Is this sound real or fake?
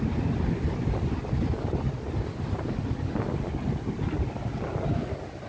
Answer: real